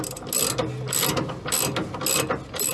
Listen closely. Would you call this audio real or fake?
real